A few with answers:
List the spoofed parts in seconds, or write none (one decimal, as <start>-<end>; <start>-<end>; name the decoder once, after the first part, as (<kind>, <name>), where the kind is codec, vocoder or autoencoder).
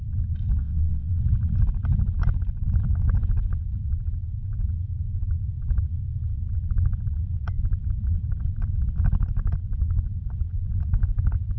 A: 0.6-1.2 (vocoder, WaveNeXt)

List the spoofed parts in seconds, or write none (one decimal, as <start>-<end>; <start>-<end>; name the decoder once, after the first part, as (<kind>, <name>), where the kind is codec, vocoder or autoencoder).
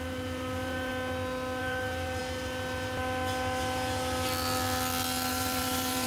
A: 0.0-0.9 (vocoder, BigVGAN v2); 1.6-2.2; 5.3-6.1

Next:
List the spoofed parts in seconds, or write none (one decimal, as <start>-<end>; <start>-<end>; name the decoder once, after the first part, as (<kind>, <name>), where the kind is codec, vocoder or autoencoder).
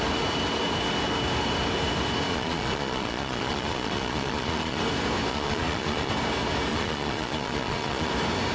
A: 2.3-4.8 (vocoder, Vocos); 5.3-6.1; 6.7-8.1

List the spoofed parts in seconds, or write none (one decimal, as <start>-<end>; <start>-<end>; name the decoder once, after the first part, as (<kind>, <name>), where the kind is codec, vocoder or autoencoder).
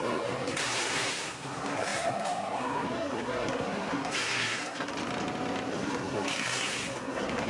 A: 0.0-4.9 (codec, SNAC); 5.7-7.5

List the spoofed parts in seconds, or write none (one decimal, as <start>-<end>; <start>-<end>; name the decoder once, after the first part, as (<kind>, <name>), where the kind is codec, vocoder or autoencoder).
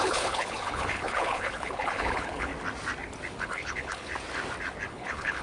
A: 0.0-2.5 (codec, HILCodec); 3.4-4.1; 4.9-5.4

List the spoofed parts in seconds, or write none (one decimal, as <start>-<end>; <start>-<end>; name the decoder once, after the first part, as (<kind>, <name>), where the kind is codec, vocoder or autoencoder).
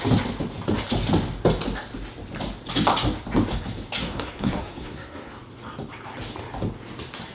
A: 4.0-5.4 (codec, SNAC)